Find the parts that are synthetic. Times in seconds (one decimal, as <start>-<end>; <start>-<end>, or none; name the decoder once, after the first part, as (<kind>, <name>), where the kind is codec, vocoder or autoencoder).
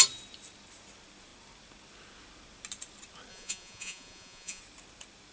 3.3-4.6 (vocoder, Vocos)